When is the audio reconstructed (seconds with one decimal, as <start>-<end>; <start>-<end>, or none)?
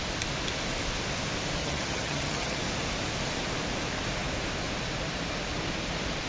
1.6-2.6